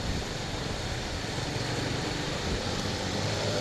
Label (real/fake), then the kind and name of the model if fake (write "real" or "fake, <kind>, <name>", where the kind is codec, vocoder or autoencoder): fake, vocoder, BigVGAN v2